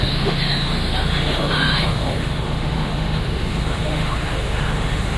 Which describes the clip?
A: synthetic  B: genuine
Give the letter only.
A